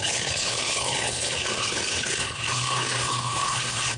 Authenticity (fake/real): fake